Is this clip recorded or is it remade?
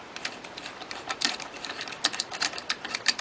remade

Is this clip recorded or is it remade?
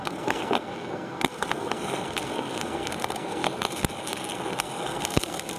remade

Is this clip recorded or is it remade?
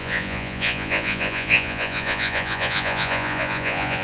remade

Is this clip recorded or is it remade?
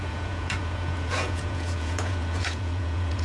remade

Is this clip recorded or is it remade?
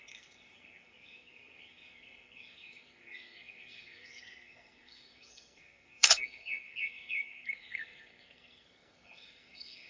remade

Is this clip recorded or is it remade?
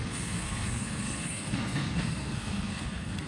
remade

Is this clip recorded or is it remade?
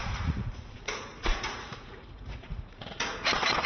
remade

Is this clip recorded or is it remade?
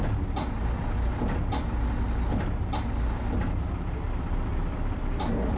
recorded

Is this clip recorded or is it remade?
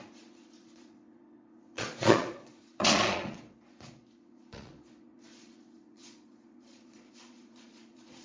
remade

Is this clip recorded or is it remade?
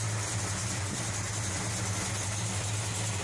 recorded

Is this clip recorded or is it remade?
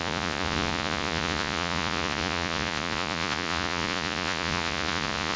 remade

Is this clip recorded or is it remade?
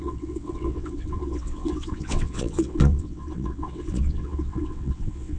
remade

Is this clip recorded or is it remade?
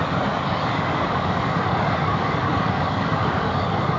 remade